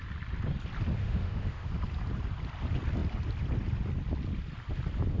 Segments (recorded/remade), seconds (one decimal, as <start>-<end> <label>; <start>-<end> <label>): 0.0-1.0 recorded; 1.0-1.7 remade; 1.7-5.2 recorded